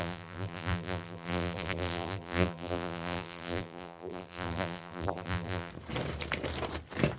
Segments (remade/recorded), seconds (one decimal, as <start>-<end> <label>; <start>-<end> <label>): 0.0-5.7 remade; 5.7-7.2 recorded